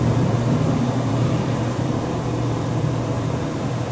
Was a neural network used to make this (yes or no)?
yes